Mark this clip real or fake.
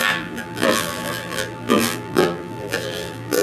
fake